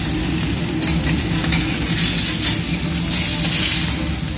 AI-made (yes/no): no